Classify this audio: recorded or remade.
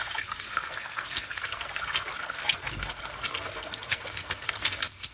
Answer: remade